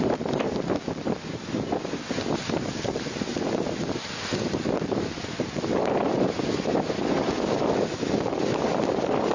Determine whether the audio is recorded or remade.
recorded